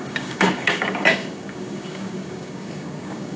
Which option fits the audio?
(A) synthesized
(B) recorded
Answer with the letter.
A